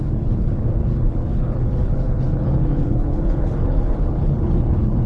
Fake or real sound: fake